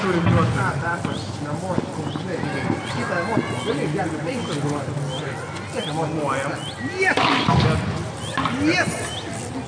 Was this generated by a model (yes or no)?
no